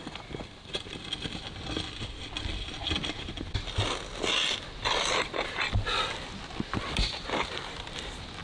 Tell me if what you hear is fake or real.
real